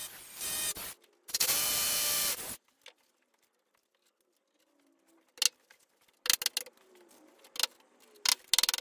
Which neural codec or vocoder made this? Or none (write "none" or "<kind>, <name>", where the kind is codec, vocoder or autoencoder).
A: none